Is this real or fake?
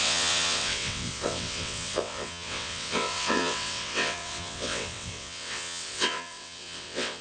fake